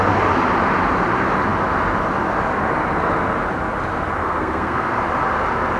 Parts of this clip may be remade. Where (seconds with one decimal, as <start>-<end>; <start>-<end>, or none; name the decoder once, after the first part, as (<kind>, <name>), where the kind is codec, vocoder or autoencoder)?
4.2-5.0 (codec, SNAC)